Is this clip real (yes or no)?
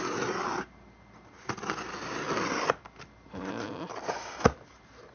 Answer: yes